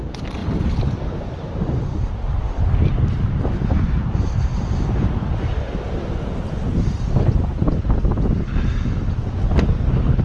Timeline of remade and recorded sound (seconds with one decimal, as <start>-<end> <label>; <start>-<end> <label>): 0.0-10.2 recorded